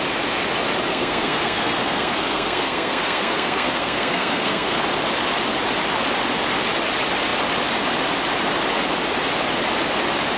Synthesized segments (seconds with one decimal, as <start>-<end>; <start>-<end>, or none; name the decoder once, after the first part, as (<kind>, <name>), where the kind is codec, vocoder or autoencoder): 0.9-4.8 (codec, SNAC)